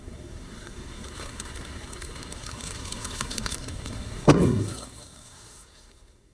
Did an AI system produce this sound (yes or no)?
yes